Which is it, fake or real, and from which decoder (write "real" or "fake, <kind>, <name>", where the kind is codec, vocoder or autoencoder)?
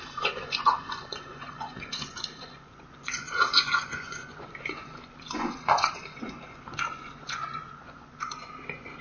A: fake, vocoder, Vocos